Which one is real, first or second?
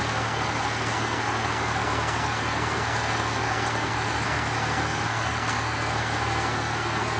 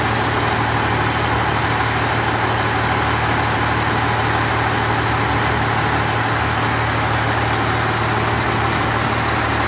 second